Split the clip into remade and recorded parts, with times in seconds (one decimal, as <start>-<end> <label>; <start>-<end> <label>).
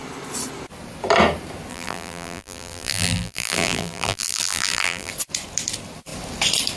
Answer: 0.0-1.7 recorded; 1.7-5.1 remade; 5.1-6.8 recorded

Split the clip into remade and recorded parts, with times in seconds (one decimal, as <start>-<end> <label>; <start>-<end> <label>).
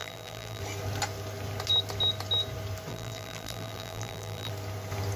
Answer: 0.0-0.6 remade; 0.6-2.9 recorded; 2.9-4.5 remade; 4.5-5.2 recorded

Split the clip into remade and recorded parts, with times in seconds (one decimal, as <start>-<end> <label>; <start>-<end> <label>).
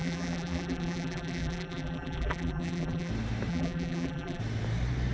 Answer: 0.0-3.1 remade; 3.1-3.5 recorded; 3.5-4.4 remade; 4.4-5.1 recorded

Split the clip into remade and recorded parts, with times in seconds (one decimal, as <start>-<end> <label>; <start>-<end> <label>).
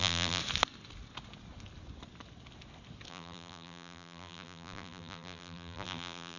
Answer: 0.0-0.4 remade; 0.4-3.1 recorded; 3.1-6.4 remade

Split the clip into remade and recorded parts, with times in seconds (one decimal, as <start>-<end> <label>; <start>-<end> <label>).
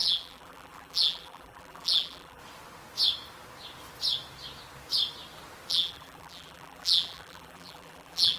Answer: 0.0-2.4 remade; 2.4-5.7 recorded; 5.7-8.4 remade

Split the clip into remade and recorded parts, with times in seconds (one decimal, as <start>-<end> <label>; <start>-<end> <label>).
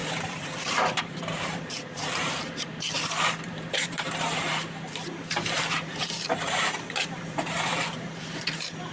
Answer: 0.0-8.9 remade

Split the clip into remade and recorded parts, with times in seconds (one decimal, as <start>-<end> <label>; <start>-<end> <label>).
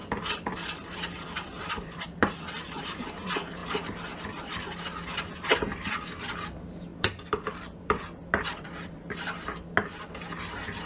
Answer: 0.0-3.1 remade; 3.1-6.9 recorded; 6.9-8.7 remade; 8.7-10.9 recorded